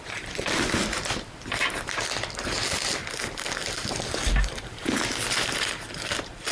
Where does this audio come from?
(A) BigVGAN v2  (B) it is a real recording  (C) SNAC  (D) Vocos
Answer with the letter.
B